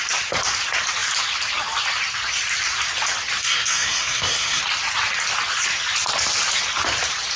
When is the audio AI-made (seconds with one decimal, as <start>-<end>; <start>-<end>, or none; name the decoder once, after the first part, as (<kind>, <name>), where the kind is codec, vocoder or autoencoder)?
3.4-4.6 (codec, SNAC)